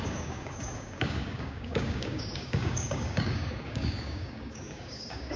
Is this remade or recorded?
remade